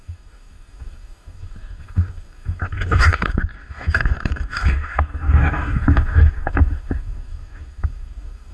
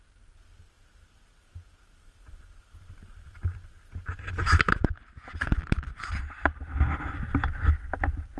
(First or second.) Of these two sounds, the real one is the second